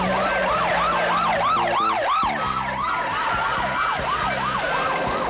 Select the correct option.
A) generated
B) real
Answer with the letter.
B